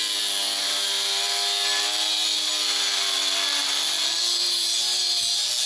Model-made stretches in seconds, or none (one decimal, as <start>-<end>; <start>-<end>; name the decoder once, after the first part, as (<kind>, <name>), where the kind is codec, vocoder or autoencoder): none